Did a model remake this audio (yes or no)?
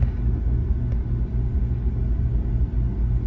no